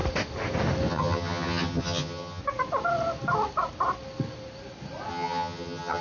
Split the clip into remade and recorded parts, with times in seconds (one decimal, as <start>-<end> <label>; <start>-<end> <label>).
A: 0.0-0.9 recorded; 0.9-2.4 remade; 2.4-5.1 recorded; 5.1-6.0 remade